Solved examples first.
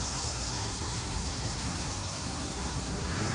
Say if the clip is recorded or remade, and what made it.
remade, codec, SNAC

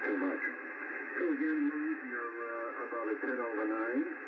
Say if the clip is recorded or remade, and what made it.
remade, autoencoder, DAC-VAE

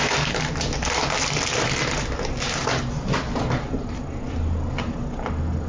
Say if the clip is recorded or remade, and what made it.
recorded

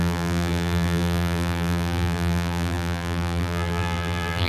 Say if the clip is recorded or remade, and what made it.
remade, vocoder, BigVGAN v2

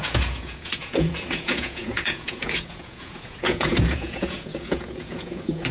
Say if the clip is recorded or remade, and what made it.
remade, vocoder, Vocos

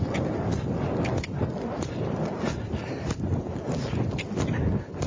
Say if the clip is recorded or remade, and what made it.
recorded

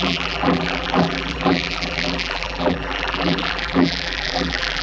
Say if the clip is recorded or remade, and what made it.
remade, vocoder, BigVGAN v2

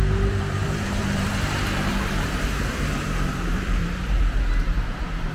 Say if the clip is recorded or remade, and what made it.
remade, vocoder, BigVGAN v2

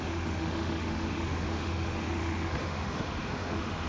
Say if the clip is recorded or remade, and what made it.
remade, autoencoder, DAC-VAE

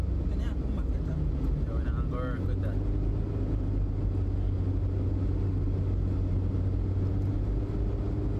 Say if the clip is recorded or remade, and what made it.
recorded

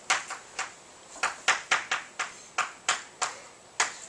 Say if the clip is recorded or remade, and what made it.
recorded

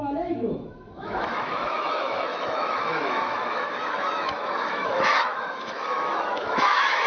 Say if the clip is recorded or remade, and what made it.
remade, autoencoder, DAC-VAE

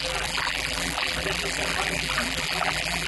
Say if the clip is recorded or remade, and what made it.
remade, vocoder, BigVGAN v2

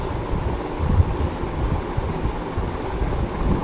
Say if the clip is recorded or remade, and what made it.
recorded